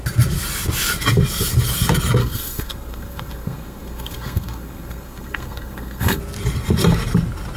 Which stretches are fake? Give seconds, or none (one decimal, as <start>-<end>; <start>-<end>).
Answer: 2.2-6.2